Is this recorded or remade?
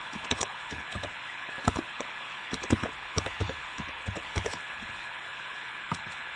remade